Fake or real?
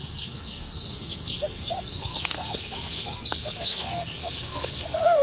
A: fake